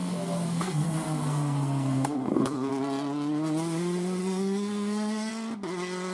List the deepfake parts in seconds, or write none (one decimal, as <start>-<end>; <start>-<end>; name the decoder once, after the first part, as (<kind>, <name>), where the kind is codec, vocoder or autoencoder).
0.0-2.7 (codec, SNAC); 4.2-5.3